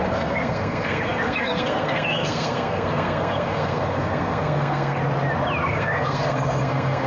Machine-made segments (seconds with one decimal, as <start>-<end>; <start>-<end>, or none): 0.0-5.0; 5.7-7.1